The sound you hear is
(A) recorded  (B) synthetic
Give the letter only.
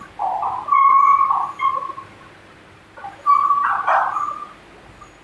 A